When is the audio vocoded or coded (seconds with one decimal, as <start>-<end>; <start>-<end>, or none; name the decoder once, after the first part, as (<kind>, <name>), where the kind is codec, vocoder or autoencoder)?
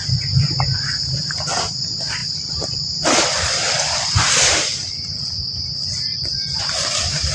2.2-6.6 (vocoder, BigVGAN v2)